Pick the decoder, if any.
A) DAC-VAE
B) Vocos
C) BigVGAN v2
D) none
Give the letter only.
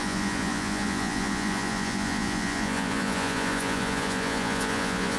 B